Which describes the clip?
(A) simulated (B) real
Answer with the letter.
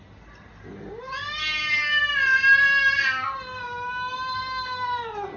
B